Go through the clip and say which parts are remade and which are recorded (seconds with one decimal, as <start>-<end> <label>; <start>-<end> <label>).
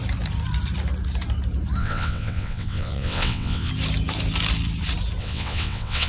0.0-1.8 recorded; 1.8-3.7 remade; 3.7-5.2 recorded; 5.2-6.1 remade